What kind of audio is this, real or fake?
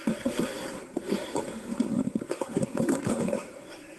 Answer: fake